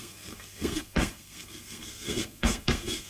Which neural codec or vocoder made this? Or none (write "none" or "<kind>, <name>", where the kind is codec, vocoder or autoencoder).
codec, SNAC